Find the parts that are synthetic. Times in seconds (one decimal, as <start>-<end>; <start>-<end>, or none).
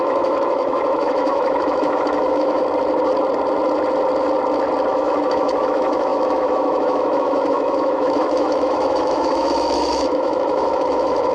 0.0-2.6; 4.9-11.3